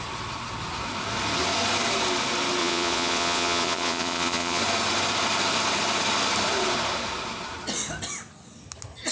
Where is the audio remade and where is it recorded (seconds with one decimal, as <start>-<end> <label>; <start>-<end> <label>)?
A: 0.0-2.6 recorded; 2.6-4.6 remade; 4.6-9.1 recorded